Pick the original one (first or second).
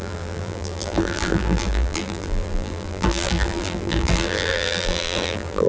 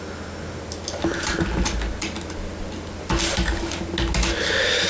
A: second